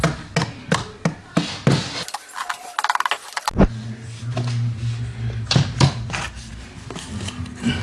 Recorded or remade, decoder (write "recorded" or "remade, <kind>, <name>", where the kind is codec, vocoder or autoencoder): recorded